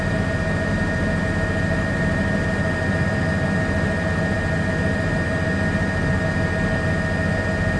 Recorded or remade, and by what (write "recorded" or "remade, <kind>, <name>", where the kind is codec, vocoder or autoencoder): recorded